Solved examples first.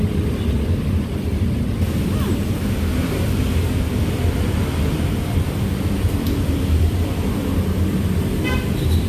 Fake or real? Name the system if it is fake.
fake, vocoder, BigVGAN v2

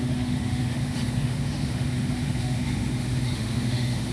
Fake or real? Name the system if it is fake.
fake, autoencoder, DAC-VAE